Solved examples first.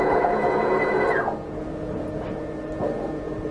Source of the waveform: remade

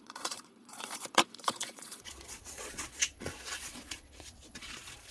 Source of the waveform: remade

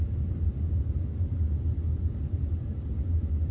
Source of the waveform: recorded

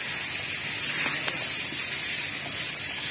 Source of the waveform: recorded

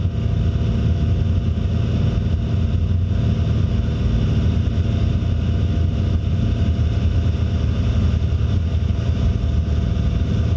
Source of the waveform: recorded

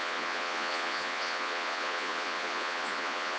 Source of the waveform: remade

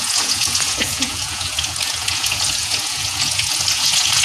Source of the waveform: remade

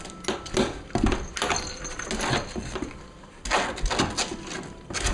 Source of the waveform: recorded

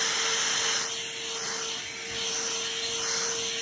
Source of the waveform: recorded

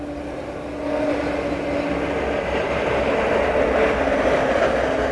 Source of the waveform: recorded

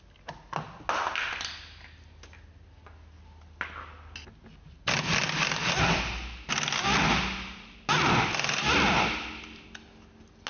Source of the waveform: recorded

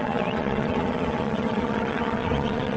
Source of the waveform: remade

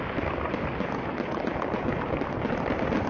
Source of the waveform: recorded